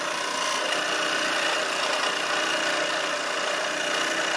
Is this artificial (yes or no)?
no